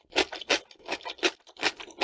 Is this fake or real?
real